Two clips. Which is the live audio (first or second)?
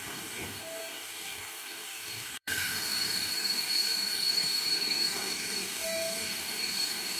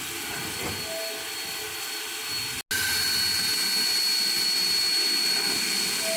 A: second